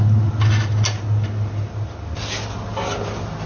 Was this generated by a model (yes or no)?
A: no